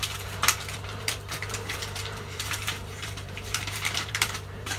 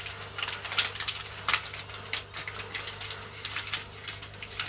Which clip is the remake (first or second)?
first